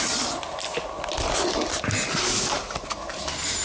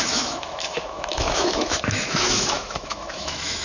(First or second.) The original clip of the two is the first